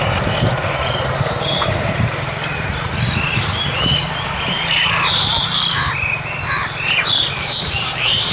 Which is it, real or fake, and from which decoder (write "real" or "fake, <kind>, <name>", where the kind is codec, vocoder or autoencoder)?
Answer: fake, vocoder, BigVGAN v2